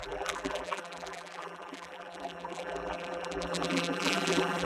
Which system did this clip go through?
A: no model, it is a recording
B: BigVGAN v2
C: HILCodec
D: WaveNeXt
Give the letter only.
B